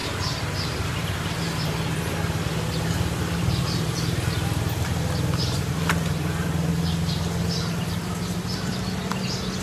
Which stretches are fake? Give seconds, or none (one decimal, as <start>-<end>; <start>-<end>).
none